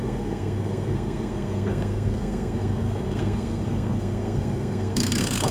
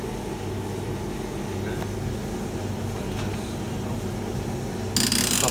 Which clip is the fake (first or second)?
first